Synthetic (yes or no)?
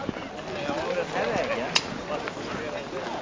no